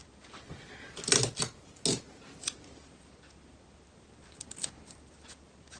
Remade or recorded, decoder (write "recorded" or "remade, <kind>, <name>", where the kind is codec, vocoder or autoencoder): recorded